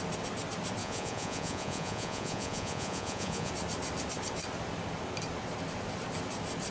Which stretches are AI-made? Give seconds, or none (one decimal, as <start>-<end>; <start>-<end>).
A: 0.8-3.5